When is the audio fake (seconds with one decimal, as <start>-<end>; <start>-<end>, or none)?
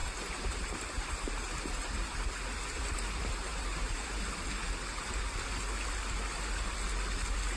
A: 0.0-2.3; 3.5-4.2